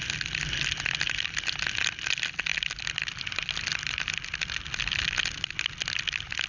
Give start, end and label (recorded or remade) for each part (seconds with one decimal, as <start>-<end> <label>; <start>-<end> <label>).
0.0-6.5 recorded